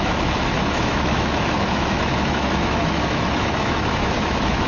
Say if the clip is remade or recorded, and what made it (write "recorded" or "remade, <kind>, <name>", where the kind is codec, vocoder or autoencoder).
remade, autoencoder, DAC-VAE